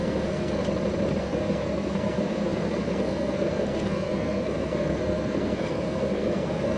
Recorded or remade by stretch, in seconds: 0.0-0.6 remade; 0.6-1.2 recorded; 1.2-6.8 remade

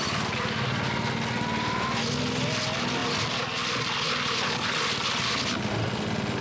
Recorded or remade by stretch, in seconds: 0.0-6.4 recorded

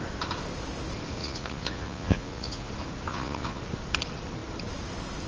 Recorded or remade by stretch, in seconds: 0.0-1.2 recorded; 1.2-2.7 remade; 2.7-3.1 recorded; 3.1-3.6 remade; 3.6-5.3 recorded

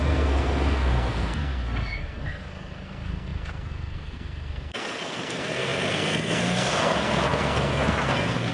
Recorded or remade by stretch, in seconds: 0.0-8.5 remade

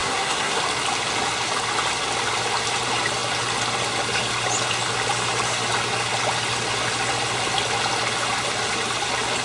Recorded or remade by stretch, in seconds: 0.0-0.6 remade; 0.6-9.4 recorded

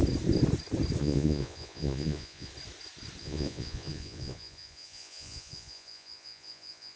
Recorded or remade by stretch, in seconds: 0.0-1.0 recorded; 1.0-2.5 remade; 2.5-3.2 recorded; 3.2-7.0 remade

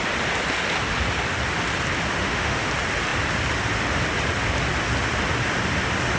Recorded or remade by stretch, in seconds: 0.0-2.2 recorded; 2.2-2.7 remade; 2.7-6.2 recorded